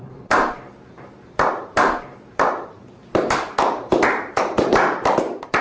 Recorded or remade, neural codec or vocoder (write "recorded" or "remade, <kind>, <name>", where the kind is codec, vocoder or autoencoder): remade, vocoder, BigVGAN v2